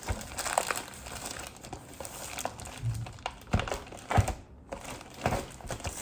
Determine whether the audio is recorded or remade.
recorded